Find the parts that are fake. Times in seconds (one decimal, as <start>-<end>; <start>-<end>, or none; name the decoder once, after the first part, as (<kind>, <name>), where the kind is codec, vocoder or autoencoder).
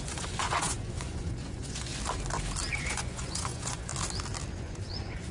0.0-1.9 (vocoder, Vocos); 2.7-3.9; 4.5-5.3